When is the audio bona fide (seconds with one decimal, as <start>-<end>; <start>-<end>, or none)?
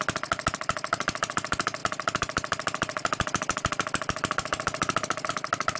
0.0-5.8